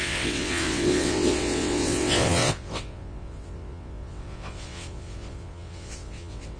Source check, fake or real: fake